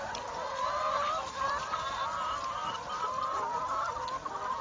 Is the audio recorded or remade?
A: recorded